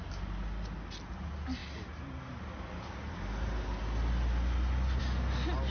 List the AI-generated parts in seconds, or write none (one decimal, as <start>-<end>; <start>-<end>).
none